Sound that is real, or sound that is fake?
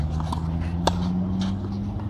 real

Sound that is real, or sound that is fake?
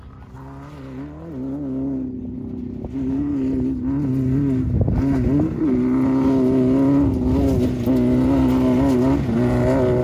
real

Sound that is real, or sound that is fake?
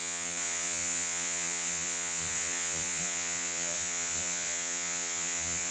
fake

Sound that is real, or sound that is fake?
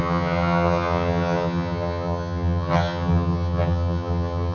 fake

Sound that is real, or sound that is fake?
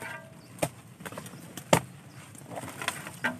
real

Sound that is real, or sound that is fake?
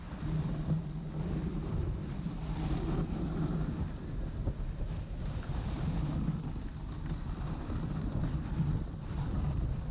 real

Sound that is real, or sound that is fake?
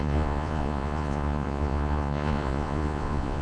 fake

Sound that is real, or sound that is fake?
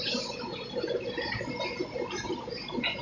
real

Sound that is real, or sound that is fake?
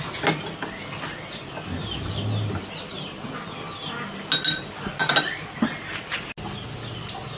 real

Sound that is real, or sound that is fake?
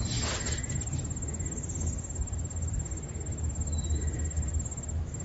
real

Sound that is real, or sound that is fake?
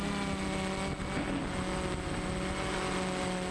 real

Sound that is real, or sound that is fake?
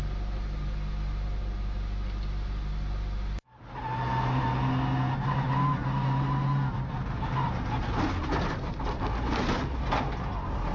real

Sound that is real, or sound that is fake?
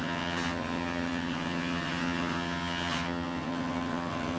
fake